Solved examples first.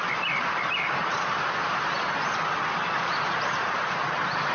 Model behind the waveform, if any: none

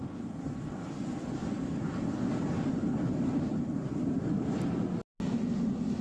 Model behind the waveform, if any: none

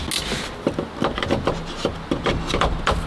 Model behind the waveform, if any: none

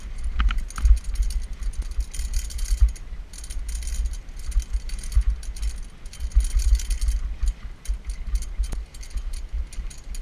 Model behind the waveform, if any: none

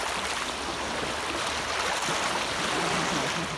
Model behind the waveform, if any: none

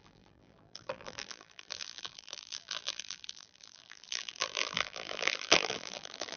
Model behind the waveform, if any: vocoder, BigVGAN v2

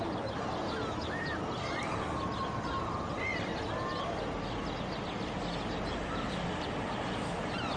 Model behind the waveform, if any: none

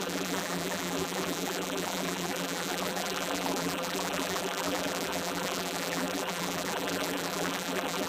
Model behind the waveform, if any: vocoder, BigVGAN v2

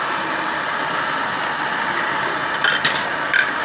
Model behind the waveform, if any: none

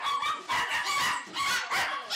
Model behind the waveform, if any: none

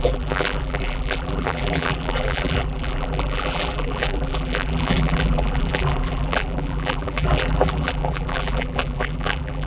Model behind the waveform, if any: vocoder, BigVGAN v2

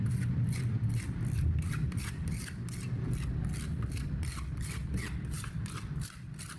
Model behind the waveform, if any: vocoder, BigVGAN v2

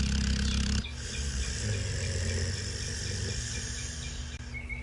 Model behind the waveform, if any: none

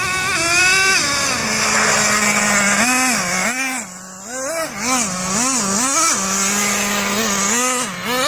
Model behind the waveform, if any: none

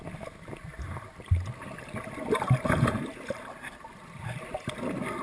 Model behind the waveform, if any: none